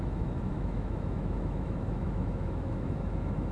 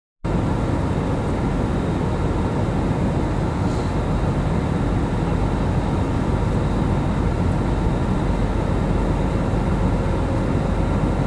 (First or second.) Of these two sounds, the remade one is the first